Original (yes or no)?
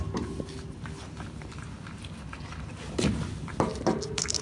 yes